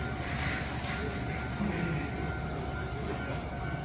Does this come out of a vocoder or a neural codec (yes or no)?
no